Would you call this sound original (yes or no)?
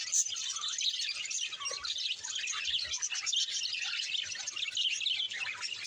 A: yes